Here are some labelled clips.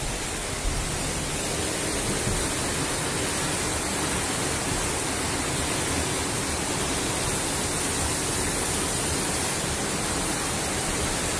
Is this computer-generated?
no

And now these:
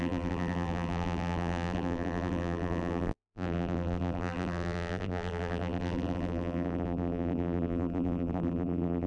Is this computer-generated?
yes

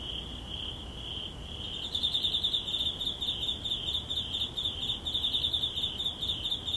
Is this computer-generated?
no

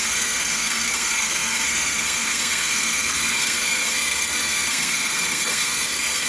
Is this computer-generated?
yes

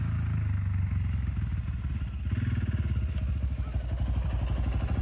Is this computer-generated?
no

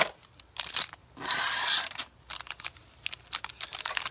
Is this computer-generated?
no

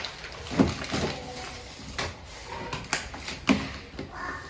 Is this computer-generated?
no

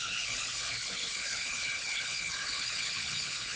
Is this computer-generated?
yes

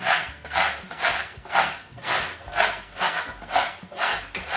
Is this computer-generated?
yes